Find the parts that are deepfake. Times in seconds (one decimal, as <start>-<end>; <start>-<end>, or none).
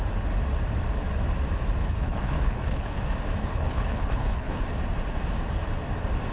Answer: 1.8-3.0; 3.4-4.6